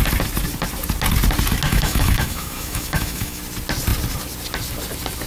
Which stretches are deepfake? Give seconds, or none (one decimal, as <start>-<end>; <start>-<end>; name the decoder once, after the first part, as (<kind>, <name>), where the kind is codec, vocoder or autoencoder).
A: 1.7-3.4 (autoencoder, DAC-VAE)